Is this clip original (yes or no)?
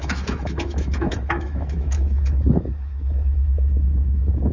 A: no